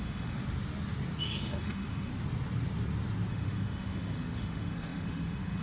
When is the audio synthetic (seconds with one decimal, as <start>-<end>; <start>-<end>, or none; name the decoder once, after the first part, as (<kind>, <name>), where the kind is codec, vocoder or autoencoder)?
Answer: 0.0-0.4 (autoencoder, DAC-VAE); 1.2-2.1; 3.3-5.6